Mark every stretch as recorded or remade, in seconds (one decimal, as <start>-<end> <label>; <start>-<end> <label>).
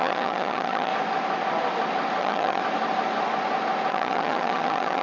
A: 0.0-0.9 remade; 0.9-2.2 recorded; 2.2-2.6 remade; 2.6-3.9 recorded; 3.9-5.0 remade